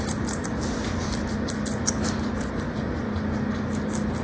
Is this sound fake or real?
real